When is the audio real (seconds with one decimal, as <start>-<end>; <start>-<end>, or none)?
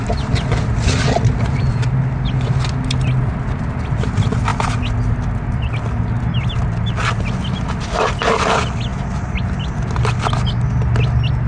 0.0-11.5